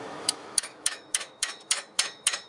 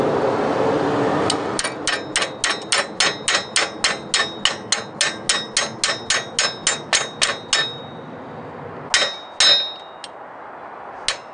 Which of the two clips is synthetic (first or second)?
first